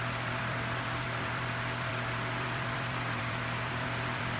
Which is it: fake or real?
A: fake